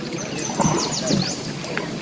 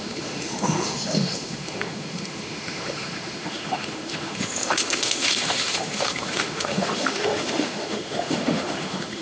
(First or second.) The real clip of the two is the first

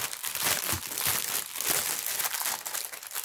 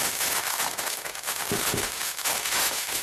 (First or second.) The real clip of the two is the first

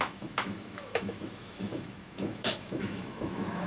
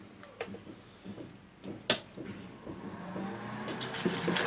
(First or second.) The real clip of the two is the second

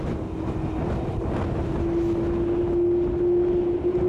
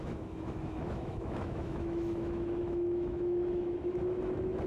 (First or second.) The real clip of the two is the first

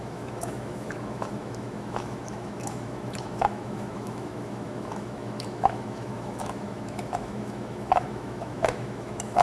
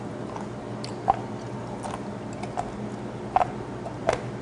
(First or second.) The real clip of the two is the second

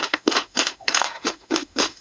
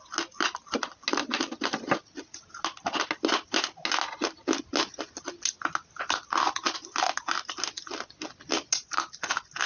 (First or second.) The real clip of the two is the second